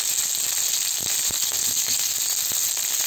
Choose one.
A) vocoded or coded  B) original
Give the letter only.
B